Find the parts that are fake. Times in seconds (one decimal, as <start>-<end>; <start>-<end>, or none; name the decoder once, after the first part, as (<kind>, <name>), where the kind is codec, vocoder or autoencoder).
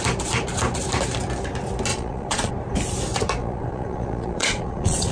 1.9-2.5 (vocoder, Vocos); 3.4-5.1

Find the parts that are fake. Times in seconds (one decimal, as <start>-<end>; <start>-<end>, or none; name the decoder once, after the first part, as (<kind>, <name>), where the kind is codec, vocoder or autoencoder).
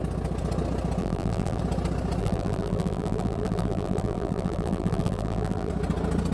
1.0-1.6 (vocoder, BigVGAN v2); 2.2-5.7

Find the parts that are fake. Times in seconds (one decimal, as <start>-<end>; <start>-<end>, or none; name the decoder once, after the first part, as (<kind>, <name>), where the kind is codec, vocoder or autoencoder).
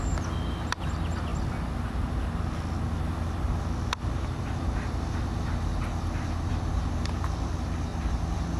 7.9-8.6 (vocoder, BigVGAN v2)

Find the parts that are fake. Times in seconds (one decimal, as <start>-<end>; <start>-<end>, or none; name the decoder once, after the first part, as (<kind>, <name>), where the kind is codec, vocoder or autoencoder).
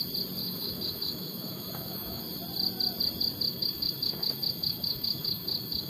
0.4-2.2 (autoencoder, DAC-VAE); 3.5-5.9